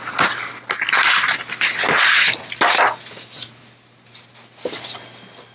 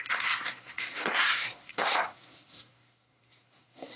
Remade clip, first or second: second